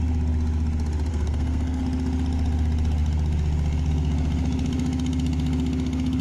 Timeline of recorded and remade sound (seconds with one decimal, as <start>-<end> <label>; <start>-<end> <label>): 0.0-1.1 recorded; 1.1-1.8 remade; 1.8-6.2 recorded